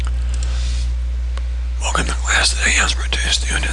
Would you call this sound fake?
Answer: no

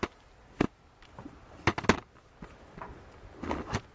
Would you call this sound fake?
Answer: no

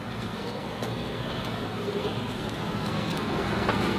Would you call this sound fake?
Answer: yes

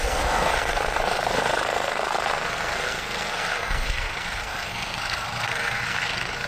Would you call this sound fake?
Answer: yes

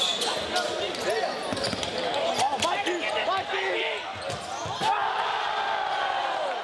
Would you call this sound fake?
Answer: no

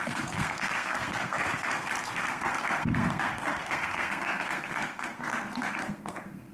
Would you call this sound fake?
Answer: yes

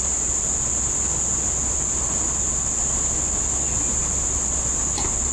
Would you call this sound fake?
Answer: no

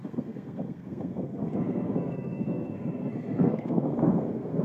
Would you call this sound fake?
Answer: yes